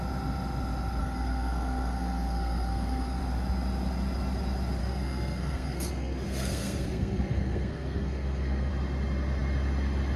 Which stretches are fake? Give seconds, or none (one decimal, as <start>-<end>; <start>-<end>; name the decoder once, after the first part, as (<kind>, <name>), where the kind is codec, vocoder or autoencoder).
1.0-3.2 (codec, SNAC); 4.8-8.7